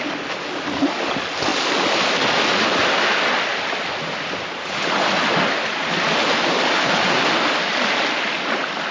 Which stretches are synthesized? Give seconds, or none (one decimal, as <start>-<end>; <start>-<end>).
none